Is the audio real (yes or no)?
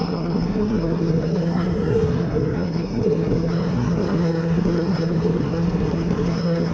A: no